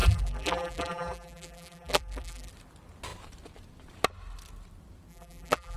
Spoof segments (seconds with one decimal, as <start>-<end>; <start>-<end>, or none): 0.0-2.5; 5.1-5.8